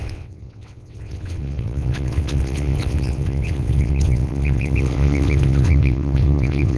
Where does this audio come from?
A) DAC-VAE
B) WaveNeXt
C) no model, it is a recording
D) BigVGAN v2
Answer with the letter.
B